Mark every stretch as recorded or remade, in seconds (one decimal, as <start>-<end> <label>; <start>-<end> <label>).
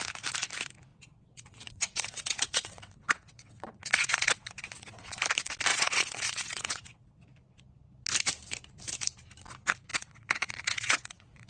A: 0.0-0.9 recorded; 0.9-5.2 remade; 5.2-5.7 recorded; 5.7-7.2 remade; 7.2-9.9 recorded; 9.9-11.5 remade